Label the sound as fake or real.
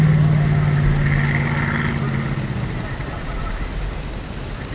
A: real